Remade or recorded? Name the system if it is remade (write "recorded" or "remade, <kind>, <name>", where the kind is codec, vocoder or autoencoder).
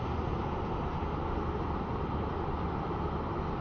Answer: recorded